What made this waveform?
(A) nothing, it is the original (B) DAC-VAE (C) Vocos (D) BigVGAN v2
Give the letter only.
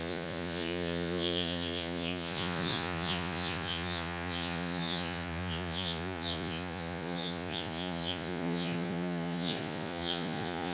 C